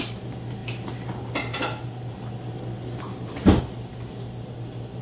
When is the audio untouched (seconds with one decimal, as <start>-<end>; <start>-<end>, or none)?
0.0-5.0